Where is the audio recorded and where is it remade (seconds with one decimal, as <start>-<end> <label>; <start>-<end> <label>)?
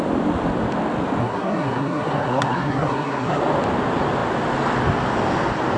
0.0-1.2 recorded; 1.2-3.4 remade; 3.4-5.8 recorded